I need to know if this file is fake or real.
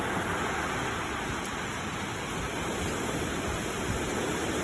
real